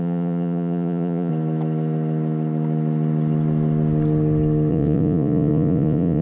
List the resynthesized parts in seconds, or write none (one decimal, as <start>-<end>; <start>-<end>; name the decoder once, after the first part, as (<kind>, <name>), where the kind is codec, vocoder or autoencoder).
0.0-1.3 (vocoder, Vocos); 4.7-6.2